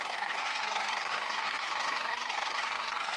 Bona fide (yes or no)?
no